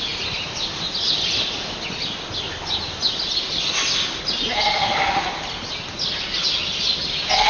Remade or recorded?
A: recorded